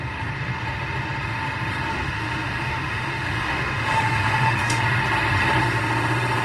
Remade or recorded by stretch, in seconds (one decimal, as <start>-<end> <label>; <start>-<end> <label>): 0.0-1.9 recorded; 1.9-4.8 remade; 4.8-6.4 recorded